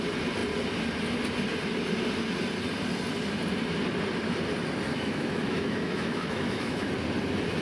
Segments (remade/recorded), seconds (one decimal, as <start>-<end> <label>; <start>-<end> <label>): 0.0-4.9 recorded; 4.9-6.9 remade; 6.9-7.6 recorded